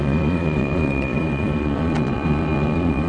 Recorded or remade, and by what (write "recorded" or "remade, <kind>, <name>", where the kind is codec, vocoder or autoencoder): remade, vocoder, Vocos